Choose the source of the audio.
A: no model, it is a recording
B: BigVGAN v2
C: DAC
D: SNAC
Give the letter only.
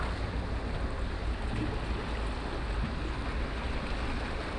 A